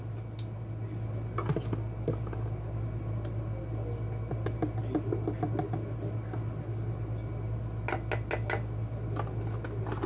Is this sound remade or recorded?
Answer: recorded